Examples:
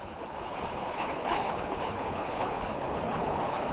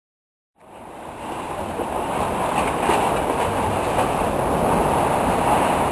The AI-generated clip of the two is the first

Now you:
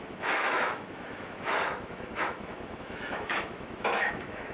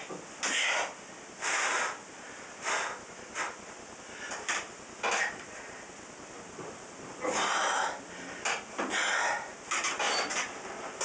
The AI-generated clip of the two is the first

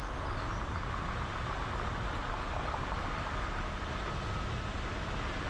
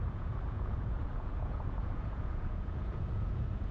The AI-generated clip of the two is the second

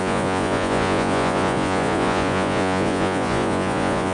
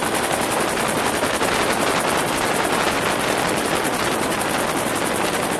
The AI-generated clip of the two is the first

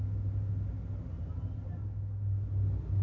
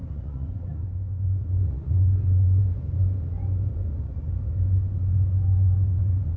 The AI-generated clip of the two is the second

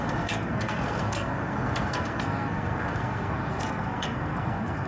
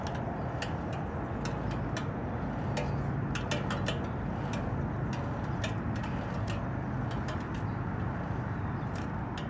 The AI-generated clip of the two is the first